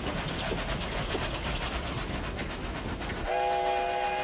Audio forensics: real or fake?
real